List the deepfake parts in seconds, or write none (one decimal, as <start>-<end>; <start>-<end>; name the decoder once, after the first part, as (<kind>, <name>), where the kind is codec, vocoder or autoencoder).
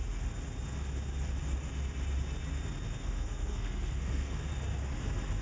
3.0-4.5 (codec, SNAC)